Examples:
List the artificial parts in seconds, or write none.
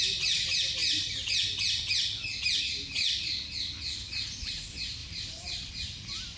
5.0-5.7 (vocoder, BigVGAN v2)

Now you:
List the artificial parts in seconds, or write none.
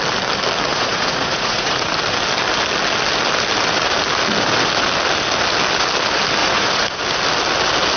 0.7-1.9 (vocoder, Vocos); 6.4-7.0